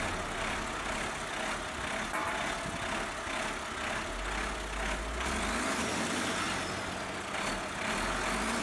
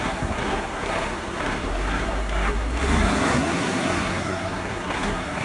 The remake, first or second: second